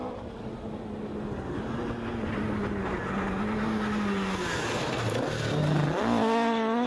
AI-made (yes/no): no